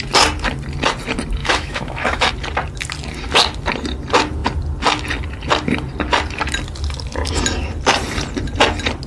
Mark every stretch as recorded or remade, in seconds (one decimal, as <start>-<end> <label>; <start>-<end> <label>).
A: 0.0-1.4 recorded; 1.4-2.3 remade; 2.3-9.1 recorded